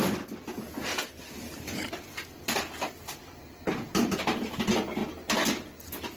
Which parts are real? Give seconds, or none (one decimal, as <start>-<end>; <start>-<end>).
0.0-0.9; 4.6-5.0